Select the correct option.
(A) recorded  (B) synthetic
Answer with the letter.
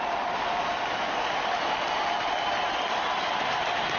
B